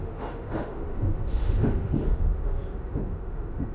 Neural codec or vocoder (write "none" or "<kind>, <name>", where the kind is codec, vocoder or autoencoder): autoencoder, DAC-VAE